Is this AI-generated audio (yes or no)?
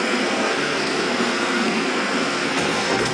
yes